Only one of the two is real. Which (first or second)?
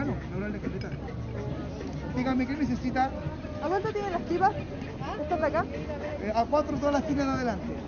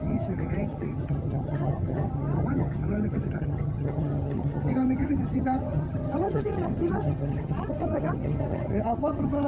first